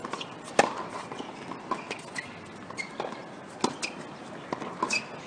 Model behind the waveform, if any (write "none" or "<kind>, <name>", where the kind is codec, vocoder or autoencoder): none